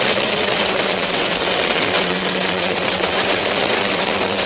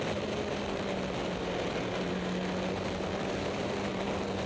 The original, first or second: second